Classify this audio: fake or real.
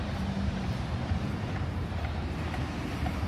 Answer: fake